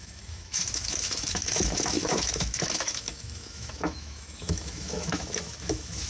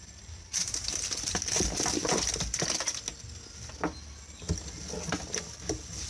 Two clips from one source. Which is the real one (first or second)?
second